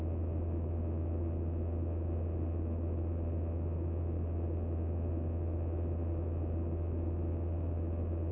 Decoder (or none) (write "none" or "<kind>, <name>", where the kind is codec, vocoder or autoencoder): none